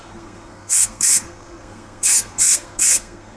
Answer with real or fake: fake